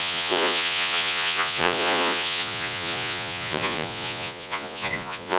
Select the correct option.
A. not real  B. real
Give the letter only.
A